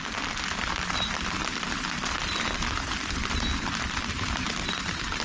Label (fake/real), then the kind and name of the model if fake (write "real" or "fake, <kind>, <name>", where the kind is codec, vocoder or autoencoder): real